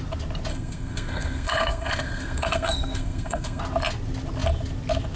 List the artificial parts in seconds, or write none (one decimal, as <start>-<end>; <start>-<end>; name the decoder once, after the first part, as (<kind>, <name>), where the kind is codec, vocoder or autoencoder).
0.5-3.6 (codec, SNAC)